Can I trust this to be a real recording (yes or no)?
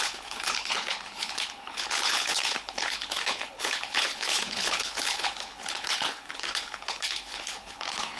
no